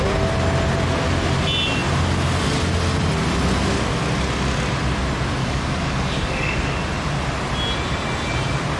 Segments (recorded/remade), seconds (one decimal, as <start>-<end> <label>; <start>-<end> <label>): 0.0-5.4 recorded; 5.4-6.8 remade; 6.8-8.8 recorded